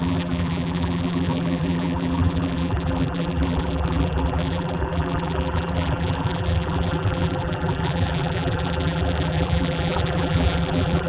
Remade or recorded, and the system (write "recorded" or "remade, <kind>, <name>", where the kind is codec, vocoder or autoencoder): remade, vocoder, BigVGAN v2